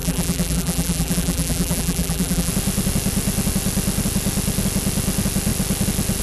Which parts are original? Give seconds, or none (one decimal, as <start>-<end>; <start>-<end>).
2.5-6.2